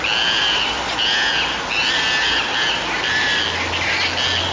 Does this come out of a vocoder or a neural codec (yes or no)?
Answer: no